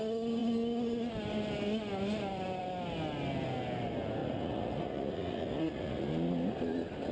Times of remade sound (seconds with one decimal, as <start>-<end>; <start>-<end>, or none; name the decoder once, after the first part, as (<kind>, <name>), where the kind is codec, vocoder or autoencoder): 4.2-6.0 (vocoder, Vocos)